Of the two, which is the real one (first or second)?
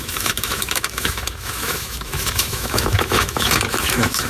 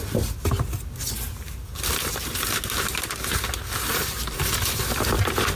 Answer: second